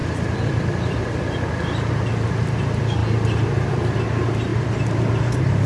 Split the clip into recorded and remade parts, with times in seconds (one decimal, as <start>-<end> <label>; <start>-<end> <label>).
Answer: 0.0-1.1 remade; 1.1-3.0 recorded; 3.0-4.0 remade; 4.0-5.7 recorded